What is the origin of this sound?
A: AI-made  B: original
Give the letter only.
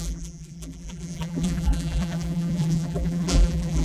A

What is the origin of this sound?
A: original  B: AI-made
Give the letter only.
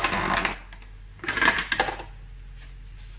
A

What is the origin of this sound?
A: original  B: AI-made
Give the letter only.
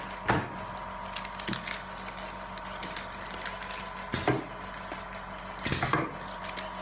A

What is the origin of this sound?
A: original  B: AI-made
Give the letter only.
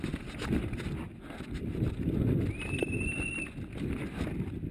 A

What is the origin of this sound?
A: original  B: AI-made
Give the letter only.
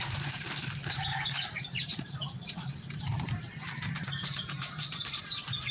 B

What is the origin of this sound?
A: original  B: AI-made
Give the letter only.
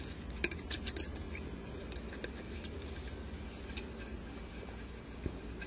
B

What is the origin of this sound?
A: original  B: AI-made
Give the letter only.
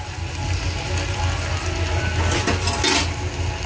A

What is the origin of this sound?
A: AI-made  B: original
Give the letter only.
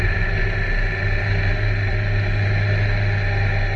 B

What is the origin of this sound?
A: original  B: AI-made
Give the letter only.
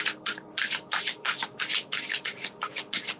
B